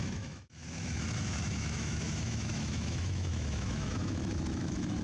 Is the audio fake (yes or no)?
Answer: yes